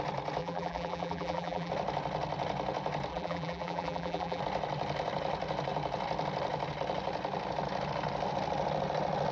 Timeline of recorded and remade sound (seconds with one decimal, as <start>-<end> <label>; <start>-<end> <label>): 0.0-0.4 recorded; 0.4-1.7 remade; 1.7-3.1 recorded; 3.1-4.4 remade; 4.4-9.3 recorded